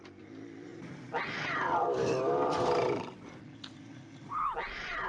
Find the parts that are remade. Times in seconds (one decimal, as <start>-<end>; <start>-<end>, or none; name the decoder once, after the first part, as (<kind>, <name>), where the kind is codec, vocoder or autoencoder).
none